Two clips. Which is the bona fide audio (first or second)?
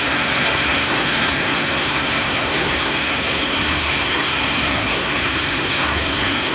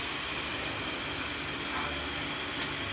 second